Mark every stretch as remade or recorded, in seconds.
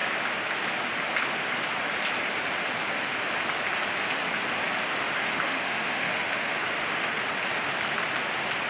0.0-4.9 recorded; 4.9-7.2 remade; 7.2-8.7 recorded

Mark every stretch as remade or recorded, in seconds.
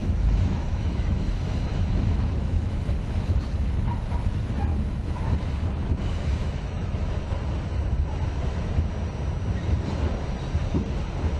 0.0-3.6 remade; 3.6-4.7 recorded; 4.7-5.2 remade; 5.2-6.4 recorded; 6.4-7.1 remade; 7.1-11.4 recorded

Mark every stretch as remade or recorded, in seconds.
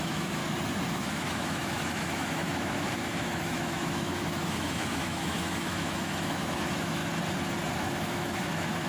0.0-0.4 remade; 0.4-0.9 recorded; 0.9-7.0 remade; 7.0-7.8 recorded; 7.8-8.9 remade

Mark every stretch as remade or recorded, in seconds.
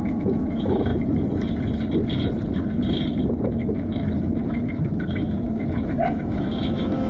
0.0-0.9 remade; 0.9-3.4 recorded; 3.4-7.1 remade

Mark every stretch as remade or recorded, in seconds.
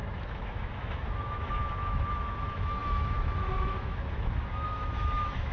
0.0-5.5 remade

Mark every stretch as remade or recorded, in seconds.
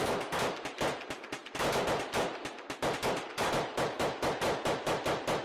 0.0-5.4 recorded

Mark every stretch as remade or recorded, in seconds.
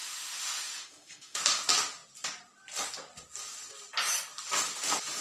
0.0-1.4 remade; 1.4-5.2 recorded